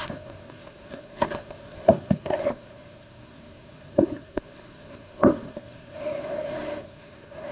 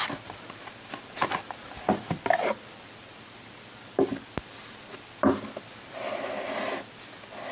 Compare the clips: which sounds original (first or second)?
second